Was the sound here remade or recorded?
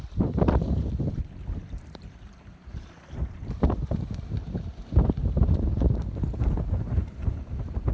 remade